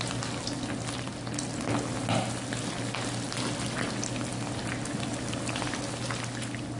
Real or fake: real